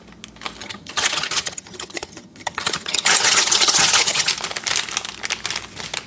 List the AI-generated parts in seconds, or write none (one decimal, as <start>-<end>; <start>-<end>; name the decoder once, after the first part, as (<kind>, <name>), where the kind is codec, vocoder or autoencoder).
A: 0.6-4.3 (vocoder, HiFi-GAN)